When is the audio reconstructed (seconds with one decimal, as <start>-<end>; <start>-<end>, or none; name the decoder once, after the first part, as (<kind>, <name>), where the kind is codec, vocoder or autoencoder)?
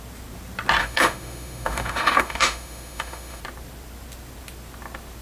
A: 0.8-3.4 (autoencoder, DAC-VAE)